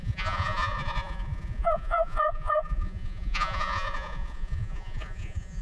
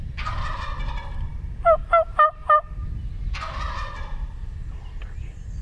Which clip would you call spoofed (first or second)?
first